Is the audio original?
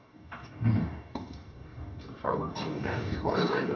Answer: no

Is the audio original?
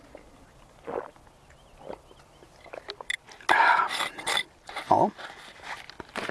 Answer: yes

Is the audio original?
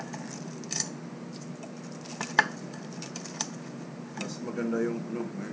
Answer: yes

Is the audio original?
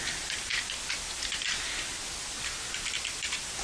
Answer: yes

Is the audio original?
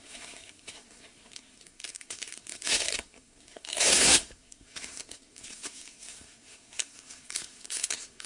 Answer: no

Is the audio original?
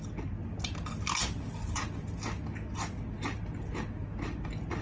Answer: yes